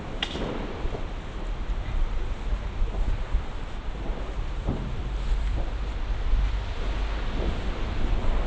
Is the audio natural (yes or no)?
yes